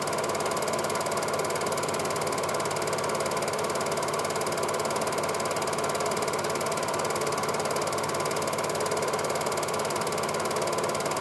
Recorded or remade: recorded